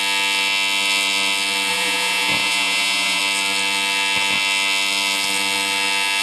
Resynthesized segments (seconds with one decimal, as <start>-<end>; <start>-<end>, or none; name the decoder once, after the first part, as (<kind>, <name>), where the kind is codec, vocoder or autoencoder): 1.7-3.2 (vocoder, Vocos)